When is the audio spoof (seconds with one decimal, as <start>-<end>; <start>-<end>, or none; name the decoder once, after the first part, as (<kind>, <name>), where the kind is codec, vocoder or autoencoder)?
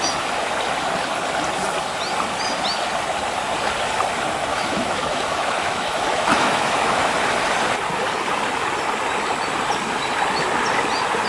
4.5-7.0 (autoencoder, DAC-VAE)